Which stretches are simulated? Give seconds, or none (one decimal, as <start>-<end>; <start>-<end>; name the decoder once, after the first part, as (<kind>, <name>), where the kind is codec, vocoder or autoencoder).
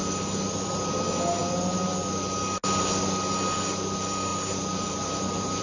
4.3-5.6 (vocoder, BigVGAN v2)